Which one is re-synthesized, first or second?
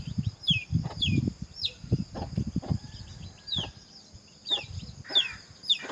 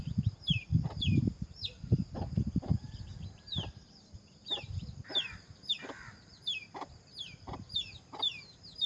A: second